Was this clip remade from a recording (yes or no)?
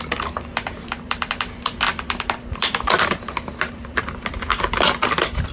yes